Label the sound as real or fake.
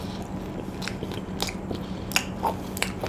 real